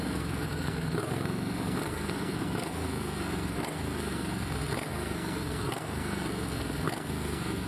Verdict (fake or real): fake